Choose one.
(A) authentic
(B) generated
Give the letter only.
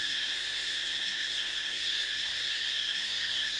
B